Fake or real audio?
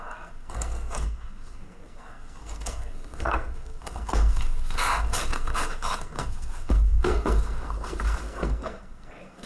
fake